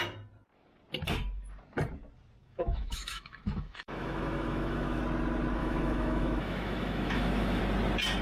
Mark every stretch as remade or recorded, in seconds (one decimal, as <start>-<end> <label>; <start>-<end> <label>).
0.0-2.4 recorded; 2.4-5.0 remade; 5.0-5.6 recorded; 5.6-7.6 remade; 7.6-8.2 recorded